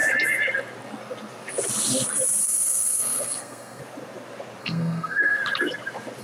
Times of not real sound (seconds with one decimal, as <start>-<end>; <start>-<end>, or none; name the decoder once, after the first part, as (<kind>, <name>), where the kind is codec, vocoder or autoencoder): 2.4-3.8 (codec, SNAC); 4.6-5.4